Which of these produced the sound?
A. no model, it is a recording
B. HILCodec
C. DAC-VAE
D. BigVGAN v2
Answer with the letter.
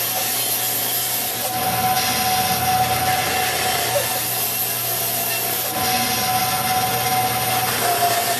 A